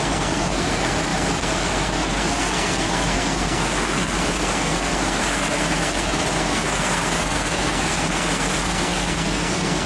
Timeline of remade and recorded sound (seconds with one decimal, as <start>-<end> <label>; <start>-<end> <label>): 0.0-9.9 remade